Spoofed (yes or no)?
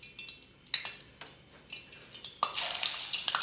no